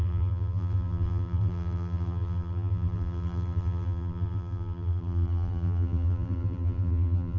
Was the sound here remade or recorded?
remade